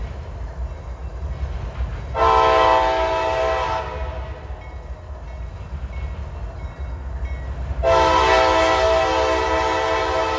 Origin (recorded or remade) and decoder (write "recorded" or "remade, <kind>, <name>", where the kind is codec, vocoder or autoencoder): recorded